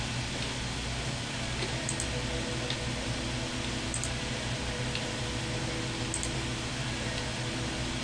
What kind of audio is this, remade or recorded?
recorded